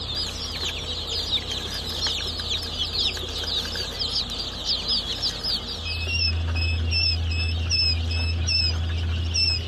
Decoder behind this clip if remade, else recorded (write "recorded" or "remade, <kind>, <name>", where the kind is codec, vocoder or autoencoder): recorded